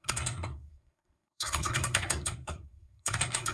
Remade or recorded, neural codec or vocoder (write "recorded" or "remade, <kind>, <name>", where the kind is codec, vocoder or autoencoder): remade, codec, SNAC